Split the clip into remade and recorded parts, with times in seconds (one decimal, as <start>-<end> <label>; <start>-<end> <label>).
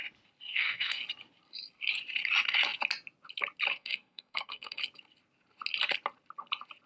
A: 0.0-0.5 recorded; 0.5-1.0 remade; 1.0-3.7 recorded; 3.7-4.8 remade; 4.8-6.9 recorded